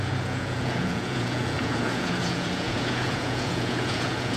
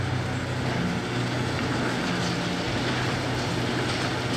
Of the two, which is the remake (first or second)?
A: first